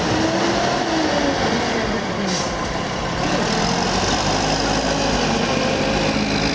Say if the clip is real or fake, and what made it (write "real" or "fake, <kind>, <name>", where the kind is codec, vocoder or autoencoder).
real